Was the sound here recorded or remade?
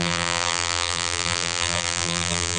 remade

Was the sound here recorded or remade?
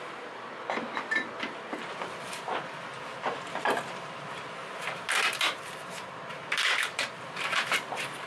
remade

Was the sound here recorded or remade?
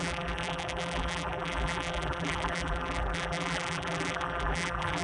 remade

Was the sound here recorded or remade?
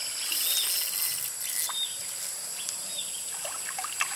recorded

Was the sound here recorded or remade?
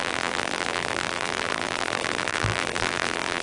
remade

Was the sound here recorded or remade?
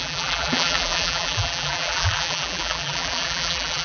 remade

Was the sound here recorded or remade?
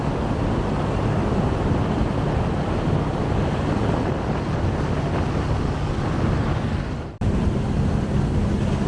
recorded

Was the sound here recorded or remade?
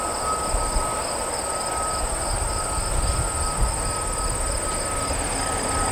recorded